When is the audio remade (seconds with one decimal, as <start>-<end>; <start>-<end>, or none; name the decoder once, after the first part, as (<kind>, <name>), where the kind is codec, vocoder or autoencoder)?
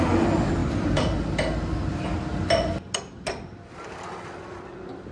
none